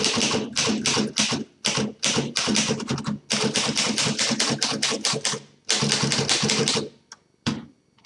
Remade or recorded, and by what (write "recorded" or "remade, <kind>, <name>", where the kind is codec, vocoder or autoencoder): recorded